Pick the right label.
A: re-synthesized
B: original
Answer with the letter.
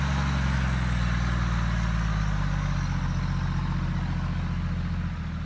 B